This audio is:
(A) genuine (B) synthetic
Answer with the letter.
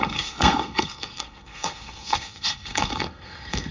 B